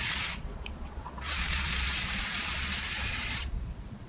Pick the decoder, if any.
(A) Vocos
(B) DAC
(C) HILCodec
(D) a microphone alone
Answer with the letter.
A